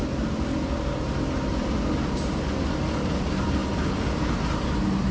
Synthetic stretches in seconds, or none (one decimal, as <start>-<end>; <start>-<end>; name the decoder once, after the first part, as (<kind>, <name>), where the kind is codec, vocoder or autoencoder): none